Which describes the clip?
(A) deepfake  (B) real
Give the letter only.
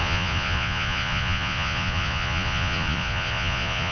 A